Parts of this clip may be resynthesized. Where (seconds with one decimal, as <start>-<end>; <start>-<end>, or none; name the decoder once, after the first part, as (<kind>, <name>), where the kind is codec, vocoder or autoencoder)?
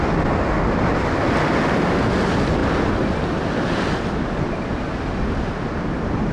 none